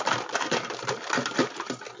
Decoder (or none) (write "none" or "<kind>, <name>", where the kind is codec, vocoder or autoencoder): none